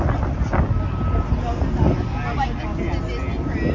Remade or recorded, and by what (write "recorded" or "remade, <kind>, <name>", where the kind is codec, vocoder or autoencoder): recorded